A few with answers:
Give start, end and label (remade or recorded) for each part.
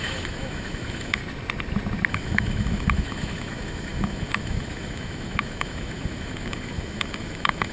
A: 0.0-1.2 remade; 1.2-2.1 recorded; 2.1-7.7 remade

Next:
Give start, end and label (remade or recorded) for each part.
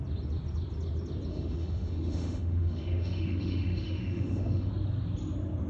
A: 0.0-1.3 recorded; 1.3-4.7 remade; 4.7-5.7 recorded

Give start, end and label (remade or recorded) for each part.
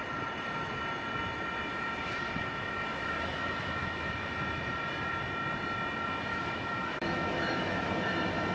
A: 0.0-1.7 recorded; 1.7-4.3 remade; 4.3-6.3 recorded; 6.3-7.9 remade; 7.9-8.5 recorded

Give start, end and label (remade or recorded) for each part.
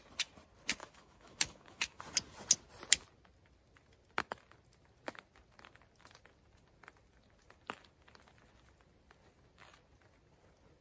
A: 0.0-0.8 recorded; 0.8-2.0 remade; 2.0-10.8 recorded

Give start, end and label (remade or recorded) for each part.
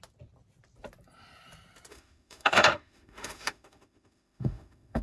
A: 0.0-1.9 recorded; 1.9-5.0 remade